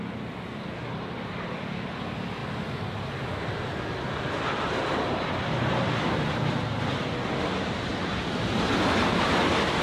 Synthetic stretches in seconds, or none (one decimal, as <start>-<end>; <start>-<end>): none